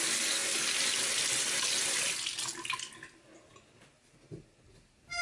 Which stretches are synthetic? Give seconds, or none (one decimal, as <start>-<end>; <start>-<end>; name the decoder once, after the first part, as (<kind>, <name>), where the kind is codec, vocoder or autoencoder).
none